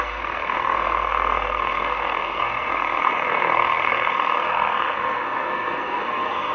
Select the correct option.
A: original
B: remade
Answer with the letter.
B